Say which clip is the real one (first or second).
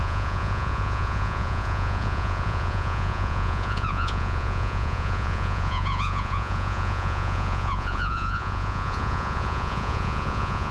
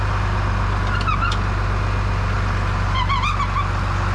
second